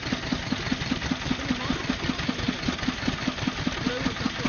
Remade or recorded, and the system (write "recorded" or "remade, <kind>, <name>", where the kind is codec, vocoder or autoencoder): recorded